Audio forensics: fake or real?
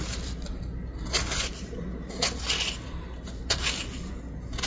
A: real